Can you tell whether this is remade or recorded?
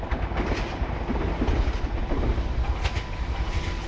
recorded